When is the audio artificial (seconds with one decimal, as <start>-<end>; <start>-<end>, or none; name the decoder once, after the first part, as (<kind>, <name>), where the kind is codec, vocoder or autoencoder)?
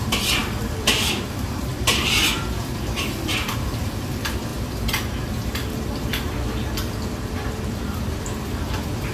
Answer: 0.0-9.1 (vocoder, BigVGAN v2)